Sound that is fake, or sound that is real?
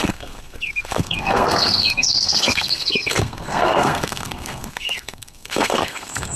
fake